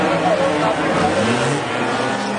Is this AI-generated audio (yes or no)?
no